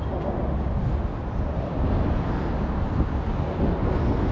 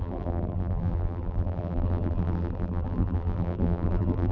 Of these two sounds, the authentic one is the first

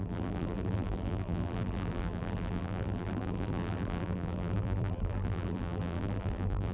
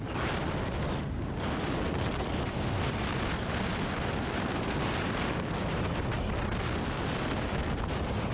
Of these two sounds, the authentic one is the second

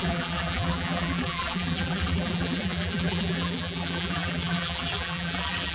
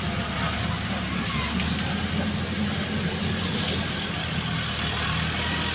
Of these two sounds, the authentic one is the second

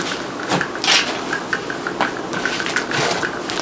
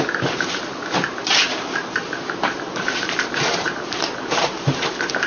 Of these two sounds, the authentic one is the first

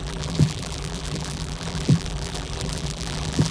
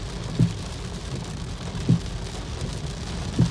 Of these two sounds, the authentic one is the second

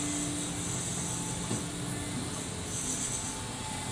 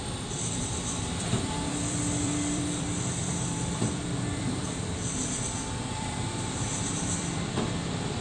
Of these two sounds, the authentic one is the first